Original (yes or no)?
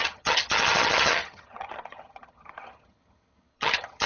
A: no